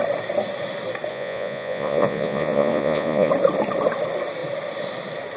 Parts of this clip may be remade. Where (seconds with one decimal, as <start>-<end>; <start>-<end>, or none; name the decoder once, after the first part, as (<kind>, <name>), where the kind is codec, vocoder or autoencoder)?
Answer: 1.1-3.3 (vocoder, Vocos)